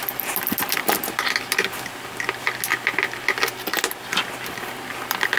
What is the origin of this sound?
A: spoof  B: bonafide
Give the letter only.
B